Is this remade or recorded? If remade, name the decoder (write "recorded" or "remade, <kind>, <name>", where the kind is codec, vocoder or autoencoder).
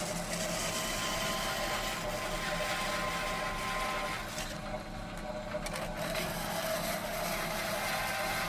recorded